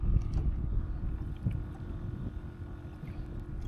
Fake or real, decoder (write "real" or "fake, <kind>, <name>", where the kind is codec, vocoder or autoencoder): real